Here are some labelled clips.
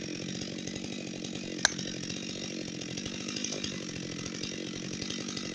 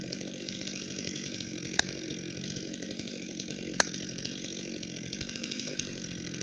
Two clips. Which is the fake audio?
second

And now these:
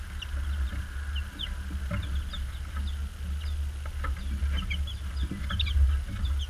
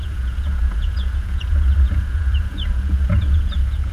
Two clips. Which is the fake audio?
second